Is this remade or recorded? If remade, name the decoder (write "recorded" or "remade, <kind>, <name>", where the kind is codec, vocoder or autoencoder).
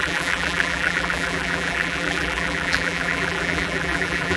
remade, vocoder, BigVGAN v2